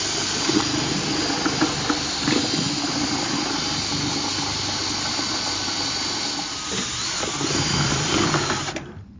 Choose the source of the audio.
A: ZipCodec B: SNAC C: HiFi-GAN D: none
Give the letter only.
D